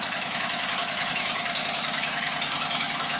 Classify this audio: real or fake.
fake